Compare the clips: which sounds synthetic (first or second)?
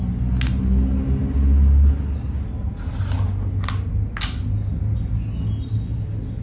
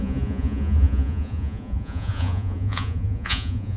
second